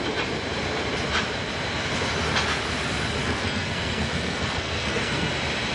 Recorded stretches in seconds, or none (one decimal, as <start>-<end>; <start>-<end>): 0.0-3.2; 5.3-5.7